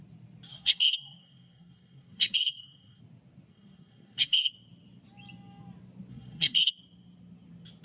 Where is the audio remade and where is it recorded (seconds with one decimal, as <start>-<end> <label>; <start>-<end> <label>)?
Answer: 0.0-0.5 recorded; 0.5-3.0 remade; 3.0-3.5 recorded; 3.5-4.5 remade; 4.5-6.1 recorded; 6.1-6.7 remade; 6.7-7.8 recorded